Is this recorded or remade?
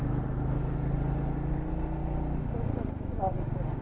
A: recorded